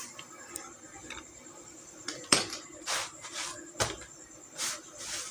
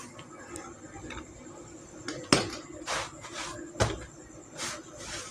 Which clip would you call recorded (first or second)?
second